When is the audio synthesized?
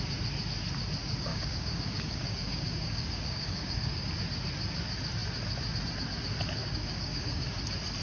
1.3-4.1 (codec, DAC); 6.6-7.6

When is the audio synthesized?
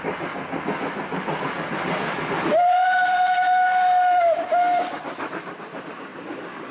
2.5-4.9 (codec, DAC); 6.1-6.7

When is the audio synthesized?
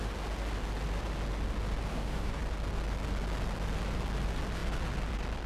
1.9-2.4 (codec, DAC)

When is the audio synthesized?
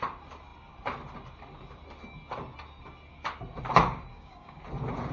4.1-4.6 (codec, DAC)